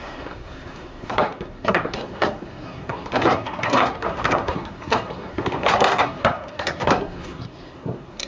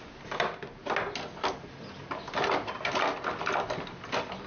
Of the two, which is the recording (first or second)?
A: second